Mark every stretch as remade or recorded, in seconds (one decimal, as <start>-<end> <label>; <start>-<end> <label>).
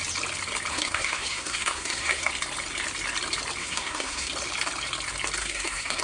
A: 0.0-0.7 recorded; 0.7-2.3 remade; 2.3-3.6 recorded; 3.6-4.3 remade; 4.3-5.4 recorded; 5.4-6.0 remade